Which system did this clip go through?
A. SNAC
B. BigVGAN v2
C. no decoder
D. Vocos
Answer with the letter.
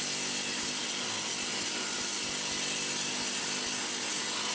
C